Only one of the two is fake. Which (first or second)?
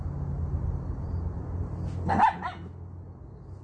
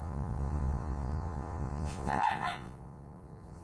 second